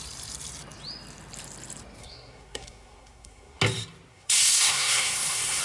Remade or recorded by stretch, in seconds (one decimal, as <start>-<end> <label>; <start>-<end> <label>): 0.0-2.0 recorded; 2.0-3.6 remade; 3.6-4.1 recorded; 4.1-5.6 remade